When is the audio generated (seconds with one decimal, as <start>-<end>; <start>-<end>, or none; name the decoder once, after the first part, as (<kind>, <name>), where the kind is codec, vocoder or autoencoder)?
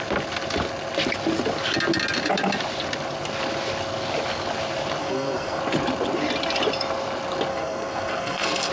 5.0-5.6 (codec, SNAC); 7.5-8.7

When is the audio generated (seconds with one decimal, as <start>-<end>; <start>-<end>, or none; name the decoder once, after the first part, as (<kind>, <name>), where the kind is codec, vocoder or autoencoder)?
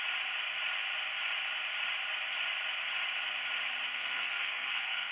3.9-5.1 (codec, SNAC)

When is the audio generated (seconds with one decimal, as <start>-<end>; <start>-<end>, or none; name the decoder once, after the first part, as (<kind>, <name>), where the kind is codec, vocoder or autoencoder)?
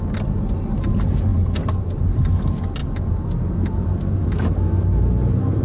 none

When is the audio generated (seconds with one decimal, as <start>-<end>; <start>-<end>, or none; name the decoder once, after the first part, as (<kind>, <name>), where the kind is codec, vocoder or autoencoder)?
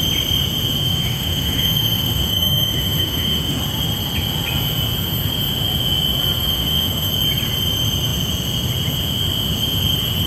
0.8-3.6 (autoencoder, DAC-VAE); 6.5-7.1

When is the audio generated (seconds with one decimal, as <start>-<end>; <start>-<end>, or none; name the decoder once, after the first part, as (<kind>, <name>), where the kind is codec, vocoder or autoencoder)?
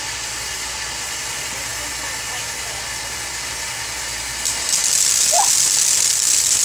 none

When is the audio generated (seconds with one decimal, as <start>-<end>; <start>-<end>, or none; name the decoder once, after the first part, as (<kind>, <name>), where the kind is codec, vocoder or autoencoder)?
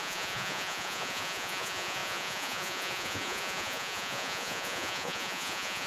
0.0-5.9 (vocoder, Vocos)